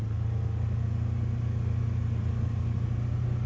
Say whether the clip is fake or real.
real